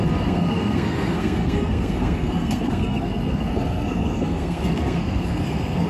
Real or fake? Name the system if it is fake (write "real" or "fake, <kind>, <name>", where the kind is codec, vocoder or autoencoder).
fake, codec, SNAC